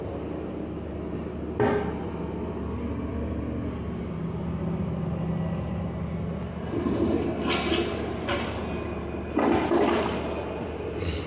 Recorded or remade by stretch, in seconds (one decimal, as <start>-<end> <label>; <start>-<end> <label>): 0.0-11.3 recorded